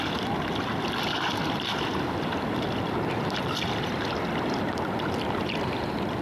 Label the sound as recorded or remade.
recorded